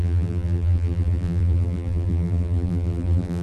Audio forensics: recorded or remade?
remade